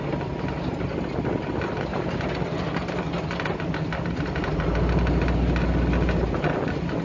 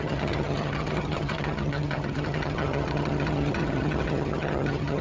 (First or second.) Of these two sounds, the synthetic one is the second